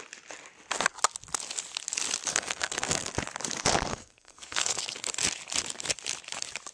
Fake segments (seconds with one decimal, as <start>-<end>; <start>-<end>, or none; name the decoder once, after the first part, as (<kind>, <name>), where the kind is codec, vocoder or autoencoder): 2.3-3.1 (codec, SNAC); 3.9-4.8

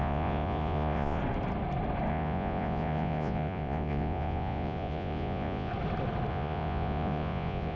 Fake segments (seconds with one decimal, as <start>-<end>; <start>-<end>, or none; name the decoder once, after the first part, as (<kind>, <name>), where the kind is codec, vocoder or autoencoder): 0.0-1.2 (vocoder, Vocos); 2.1-5.7; 6.3-7.8

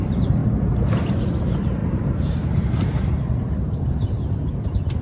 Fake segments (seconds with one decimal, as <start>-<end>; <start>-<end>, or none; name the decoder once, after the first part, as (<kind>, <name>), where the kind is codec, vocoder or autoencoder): 0.0-0.4 (vocoder, BigVGAN v2); 1.4-5.0